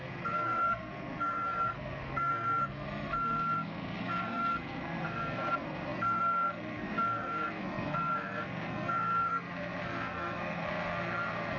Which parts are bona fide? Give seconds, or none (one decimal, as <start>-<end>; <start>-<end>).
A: none